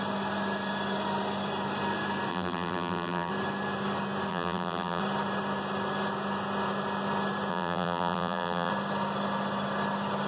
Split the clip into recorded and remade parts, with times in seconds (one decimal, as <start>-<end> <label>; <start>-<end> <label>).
0.0-2.3 recorded; 2.3-3.3 remade; 3.3-4.3 recorded; 4.3-5.0 remade; 5.0-7.5 recorded; 7.5-8.7 remade; 8.7-10.3 recorded